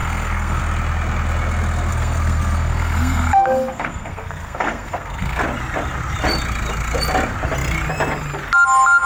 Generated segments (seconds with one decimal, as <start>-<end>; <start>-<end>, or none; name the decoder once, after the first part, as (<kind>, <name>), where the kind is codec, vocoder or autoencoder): 0.0-0.6 (codec, SNAC); 1.9-5.4